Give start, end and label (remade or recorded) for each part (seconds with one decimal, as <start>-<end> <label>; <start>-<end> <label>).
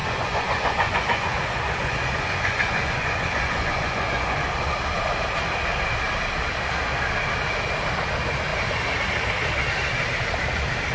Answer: 0.0-4.5 remade; 4.5-10.9 recorded